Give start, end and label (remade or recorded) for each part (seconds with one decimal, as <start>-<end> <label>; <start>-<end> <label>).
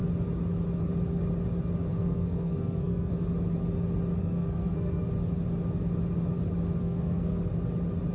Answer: 0.0-1.9 recorded; 1.9-3.1 remade; 3.1-4.2 recorded; 4.2-5.1 remade; 5.1-6.8 recorded; 6.8-7.5 remade; 7.5-8.1 recorded